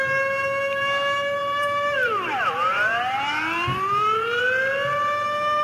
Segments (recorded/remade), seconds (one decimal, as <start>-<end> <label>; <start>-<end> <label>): 0.0-1.4 recorded; 1.4-4.4 remade; 4.4-5.6 recorded